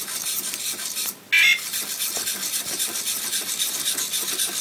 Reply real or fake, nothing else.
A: real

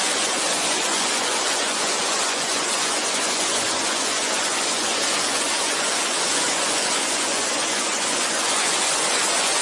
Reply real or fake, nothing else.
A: fake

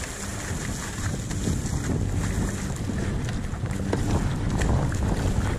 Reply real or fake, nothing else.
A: real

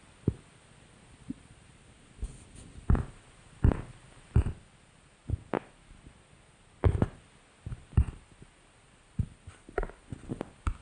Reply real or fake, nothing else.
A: real